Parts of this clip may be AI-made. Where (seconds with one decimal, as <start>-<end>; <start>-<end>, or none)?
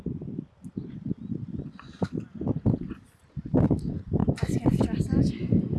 none